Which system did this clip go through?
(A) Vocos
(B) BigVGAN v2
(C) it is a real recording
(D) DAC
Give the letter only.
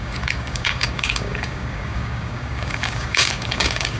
D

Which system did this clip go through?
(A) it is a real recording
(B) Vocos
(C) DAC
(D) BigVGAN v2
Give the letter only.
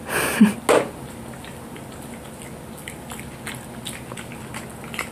A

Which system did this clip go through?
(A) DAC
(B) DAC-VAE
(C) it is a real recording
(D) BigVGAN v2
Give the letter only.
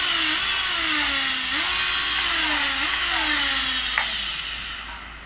C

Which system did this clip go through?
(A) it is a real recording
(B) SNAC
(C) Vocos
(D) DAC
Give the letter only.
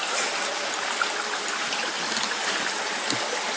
A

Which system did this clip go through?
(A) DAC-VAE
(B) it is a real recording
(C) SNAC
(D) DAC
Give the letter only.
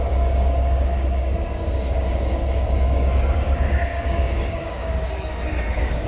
D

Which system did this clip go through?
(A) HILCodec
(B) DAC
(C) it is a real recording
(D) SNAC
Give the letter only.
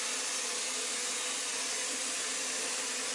C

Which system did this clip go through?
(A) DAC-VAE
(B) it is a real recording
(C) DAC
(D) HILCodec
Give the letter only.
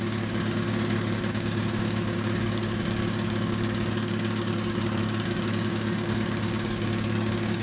C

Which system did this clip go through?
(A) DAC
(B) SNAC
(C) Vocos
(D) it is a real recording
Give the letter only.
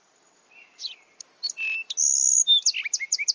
D